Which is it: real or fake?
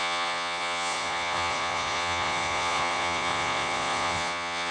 fake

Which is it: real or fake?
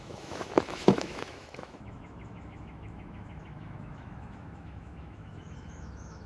fake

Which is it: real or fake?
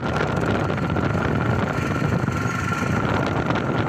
real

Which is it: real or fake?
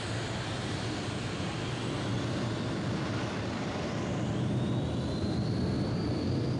real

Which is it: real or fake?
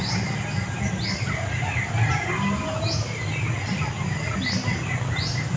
real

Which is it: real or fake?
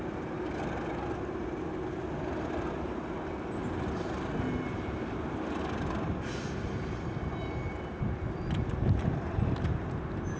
real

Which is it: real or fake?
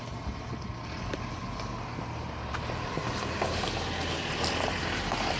real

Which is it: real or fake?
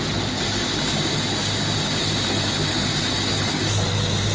real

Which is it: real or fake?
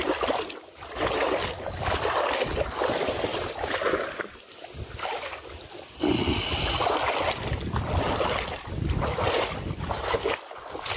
real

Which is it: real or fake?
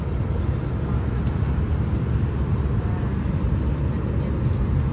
real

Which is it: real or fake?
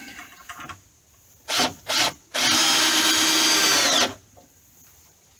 real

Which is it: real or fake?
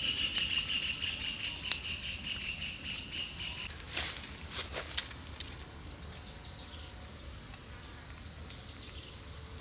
real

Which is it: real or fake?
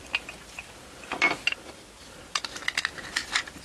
real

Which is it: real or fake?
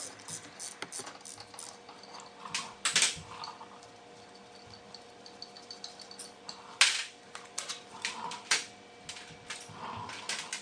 real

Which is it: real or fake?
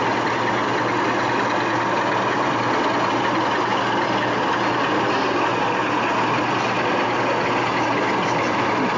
real